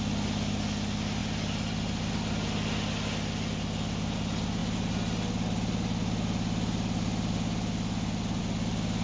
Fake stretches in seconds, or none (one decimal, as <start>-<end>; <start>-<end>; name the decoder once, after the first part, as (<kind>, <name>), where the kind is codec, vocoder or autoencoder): none